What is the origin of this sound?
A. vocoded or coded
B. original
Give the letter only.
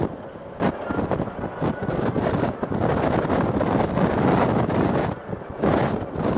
B